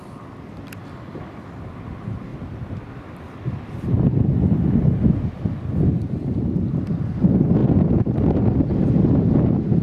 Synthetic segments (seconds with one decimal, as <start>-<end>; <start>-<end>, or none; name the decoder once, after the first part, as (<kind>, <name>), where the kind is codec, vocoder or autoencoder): none